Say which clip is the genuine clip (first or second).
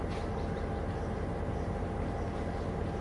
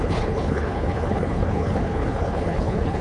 first